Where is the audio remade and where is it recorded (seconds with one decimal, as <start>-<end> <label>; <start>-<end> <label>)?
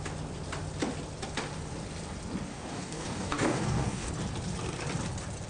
0.0-2.5 recorded; 2.5-4.1 remade; 4.1-5.5 recorded